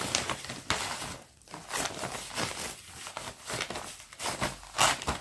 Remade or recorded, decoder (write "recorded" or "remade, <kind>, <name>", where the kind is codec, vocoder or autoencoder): recorded